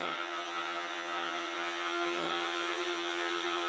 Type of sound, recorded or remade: remade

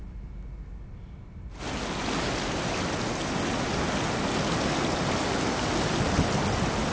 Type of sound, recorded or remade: recorded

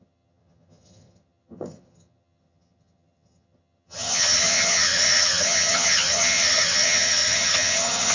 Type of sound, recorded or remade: remade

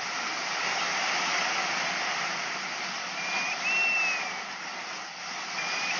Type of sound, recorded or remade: recorded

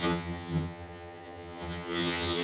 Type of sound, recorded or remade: remade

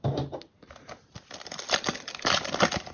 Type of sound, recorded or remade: recorded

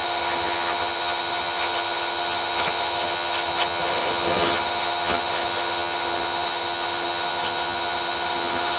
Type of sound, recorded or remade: remade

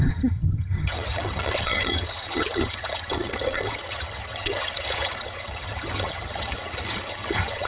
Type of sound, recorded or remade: remade